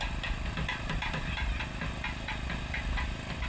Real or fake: real